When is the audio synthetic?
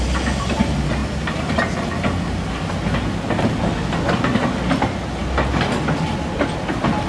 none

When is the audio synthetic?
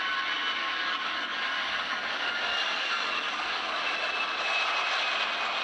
0.6-3.8 (codec, DAC)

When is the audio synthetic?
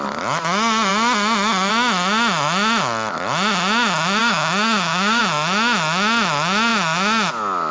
4.2-5.2 (codec, DAC)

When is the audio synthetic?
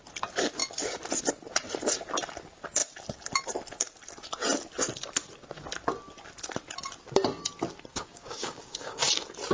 7.9-9.0 (codec, DAC)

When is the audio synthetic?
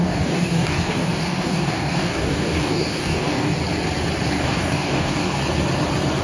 0.0-3.5 (codec, DAC); 4.3-5.4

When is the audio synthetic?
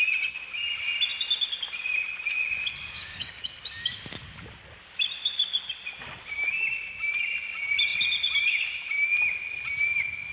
2.8-3.4 (codec, DAC)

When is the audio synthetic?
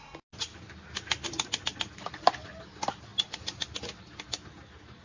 none